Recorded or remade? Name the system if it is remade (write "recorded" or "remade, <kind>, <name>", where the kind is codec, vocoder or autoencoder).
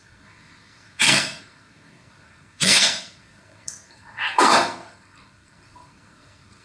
remade, codec, SNAC